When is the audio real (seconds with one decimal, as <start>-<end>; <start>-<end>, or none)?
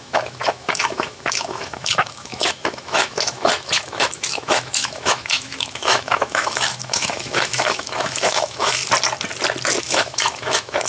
8.8-9.8